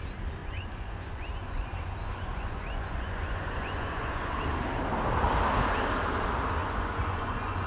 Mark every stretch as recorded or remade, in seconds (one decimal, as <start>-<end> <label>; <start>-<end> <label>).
0.0-0.4 recorded; 0.4-4.4 remade; 4.4-6.6 recorded; 6.6-7.7 remade